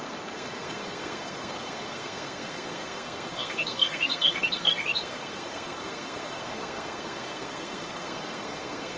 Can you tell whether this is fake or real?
fake